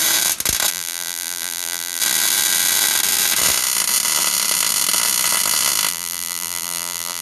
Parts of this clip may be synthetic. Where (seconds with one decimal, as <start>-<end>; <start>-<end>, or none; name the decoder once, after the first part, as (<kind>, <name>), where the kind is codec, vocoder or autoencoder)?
0.7-2.0 (vocoder, BigVGAN v2); 5.9-7.2